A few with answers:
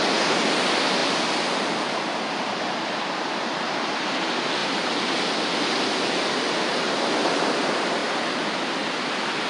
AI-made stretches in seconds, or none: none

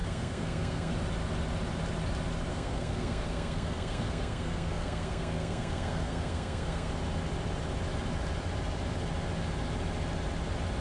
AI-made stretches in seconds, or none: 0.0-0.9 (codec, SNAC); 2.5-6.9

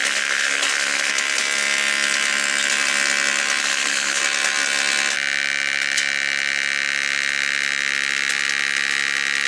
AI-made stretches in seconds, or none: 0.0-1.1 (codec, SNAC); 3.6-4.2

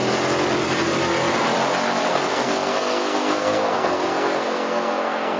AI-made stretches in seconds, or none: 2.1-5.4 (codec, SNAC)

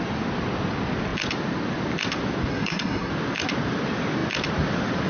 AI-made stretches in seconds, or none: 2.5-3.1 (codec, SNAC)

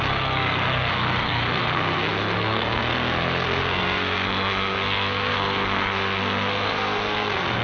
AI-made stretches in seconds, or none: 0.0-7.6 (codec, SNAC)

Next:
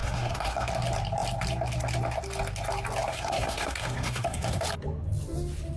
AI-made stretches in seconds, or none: 0.0-0.7 (codec, SNAC); 3.1-4.6

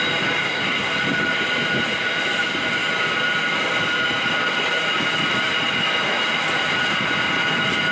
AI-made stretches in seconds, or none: 0.4-0.9 (codec, SNAC)